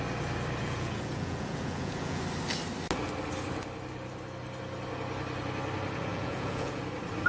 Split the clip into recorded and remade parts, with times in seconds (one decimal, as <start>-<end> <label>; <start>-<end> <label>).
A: 0.0-0.6 recorded; 0.6-2.2 remade; 2.2-6.1 recorded; 6.1-6.8 remade; 6.8-7.3 recorded